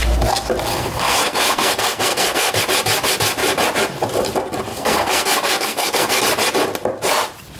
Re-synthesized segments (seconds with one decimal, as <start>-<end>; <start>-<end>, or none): 0.7-2.6; 4.7-6.2

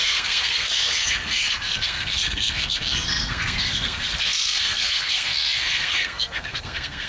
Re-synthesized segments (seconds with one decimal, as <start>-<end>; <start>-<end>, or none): 0.0-7.1

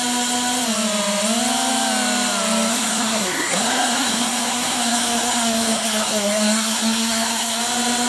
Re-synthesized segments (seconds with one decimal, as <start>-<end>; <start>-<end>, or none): 2.7-7.6

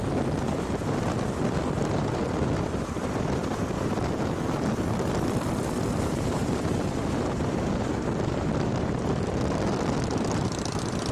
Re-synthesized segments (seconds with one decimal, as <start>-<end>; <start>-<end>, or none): none